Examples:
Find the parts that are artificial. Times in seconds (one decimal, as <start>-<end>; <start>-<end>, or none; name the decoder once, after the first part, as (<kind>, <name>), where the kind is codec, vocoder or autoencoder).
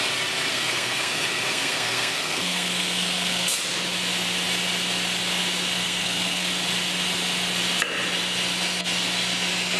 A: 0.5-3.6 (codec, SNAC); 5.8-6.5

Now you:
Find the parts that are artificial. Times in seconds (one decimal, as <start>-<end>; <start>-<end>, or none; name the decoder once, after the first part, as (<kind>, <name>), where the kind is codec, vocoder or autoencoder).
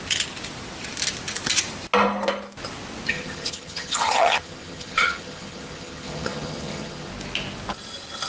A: 3.1-7.1 (vocoder, HiFi-GAN)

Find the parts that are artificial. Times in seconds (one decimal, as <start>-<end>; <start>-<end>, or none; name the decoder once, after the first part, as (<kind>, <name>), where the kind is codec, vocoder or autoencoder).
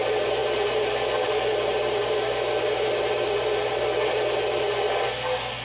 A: none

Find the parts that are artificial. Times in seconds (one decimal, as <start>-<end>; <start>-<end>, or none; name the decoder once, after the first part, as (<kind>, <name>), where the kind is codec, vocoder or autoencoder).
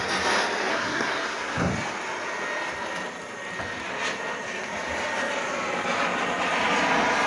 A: 0.7-1.7 (codec, SNAC)